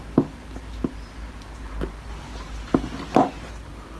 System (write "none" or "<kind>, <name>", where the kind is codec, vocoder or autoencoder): none